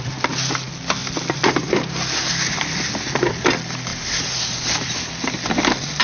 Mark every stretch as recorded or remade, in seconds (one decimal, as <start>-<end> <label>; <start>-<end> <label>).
0.0-3.9 recorded; 3.9-5.1 remade; 5.1-6.0 recorded